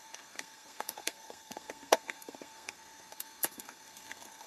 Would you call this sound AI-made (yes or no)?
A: yes